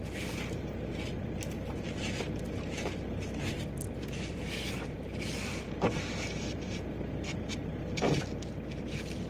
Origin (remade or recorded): recorded